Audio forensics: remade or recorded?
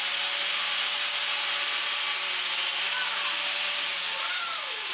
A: recorded